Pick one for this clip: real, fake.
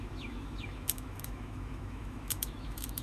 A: fake